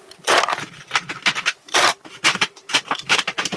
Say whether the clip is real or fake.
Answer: fake